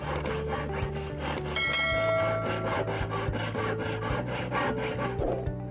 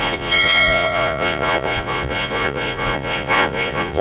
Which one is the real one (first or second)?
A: first